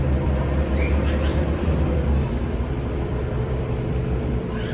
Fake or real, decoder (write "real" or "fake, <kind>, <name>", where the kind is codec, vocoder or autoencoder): fake, vocoder, BigVGAN v2